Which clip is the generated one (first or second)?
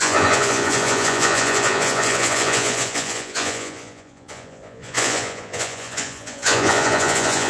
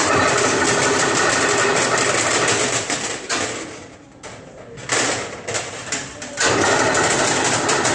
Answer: first